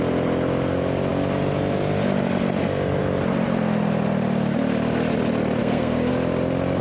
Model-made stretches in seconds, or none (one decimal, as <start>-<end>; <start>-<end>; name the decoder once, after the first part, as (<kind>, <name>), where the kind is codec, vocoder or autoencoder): 5.6-6.1 (codec, SNAC)